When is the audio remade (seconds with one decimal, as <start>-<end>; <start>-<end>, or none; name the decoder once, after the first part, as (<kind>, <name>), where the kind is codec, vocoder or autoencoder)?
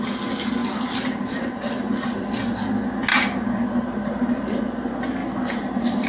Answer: 0.6-1.7 (vocoder, BigVGAN v2); 3.1-4.6; 5.2-6.1